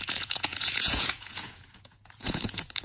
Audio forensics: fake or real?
fake